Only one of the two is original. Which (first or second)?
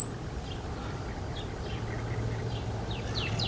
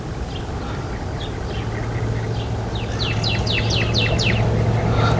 second